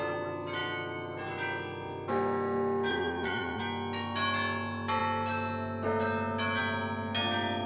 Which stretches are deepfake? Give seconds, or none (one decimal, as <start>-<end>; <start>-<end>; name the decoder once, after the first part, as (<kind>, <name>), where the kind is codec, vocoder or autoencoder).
2.9-3.6 (vocoder, Vocos)